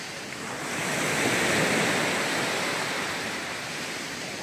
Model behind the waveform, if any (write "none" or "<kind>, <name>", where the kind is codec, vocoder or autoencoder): none